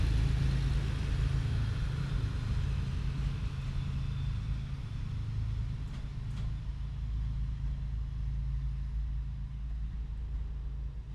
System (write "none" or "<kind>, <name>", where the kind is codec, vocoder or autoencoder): none